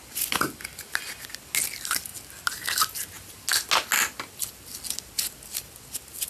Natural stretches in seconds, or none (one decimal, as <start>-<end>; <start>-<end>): 0.0-6.3